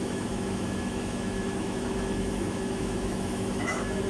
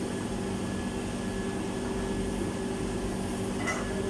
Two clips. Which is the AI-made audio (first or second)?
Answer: first